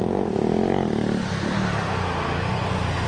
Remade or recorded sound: recorded